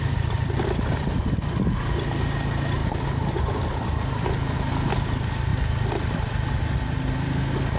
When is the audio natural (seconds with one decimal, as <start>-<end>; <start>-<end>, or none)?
0.0-2.8; 4.5-7.8